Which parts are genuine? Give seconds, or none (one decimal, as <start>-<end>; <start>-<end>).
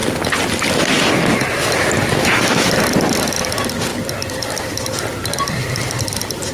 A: 0.0-2.2; 2.7-6.5